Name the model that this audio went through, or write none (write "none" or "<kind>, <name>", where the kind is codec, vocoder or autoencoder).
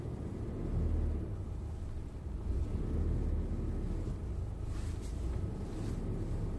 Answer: none